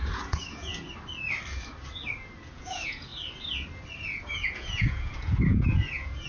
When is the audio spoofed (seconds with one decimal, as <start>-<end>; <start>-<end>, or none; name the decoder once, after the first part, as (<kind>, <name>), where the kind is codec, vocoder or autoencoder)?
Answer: 0.0-0.7 (vocoder, Vocos); 2.5-3.1; 4.0-6.3